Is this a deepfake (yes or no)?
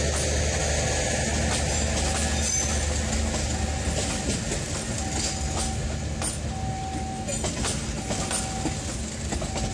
no